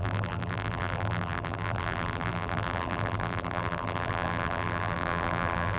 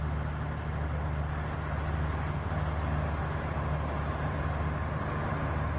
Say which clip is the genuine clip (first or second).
second